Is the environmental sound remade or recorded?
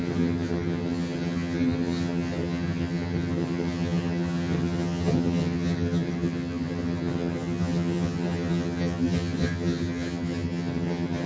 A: remade